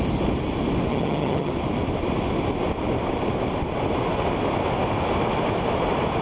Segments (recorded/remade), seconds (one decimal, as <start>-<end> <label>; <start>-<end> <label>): 0.0-0.9 recorded; 0.9-1.5 remade; 1.5-6.2 recorded